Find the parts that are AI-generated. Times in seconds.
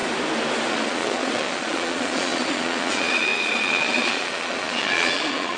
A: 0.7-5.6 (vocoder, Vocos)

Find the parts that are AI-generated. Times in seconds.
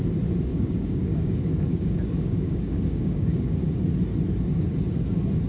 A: 0.5-3.8 (codec, DAC)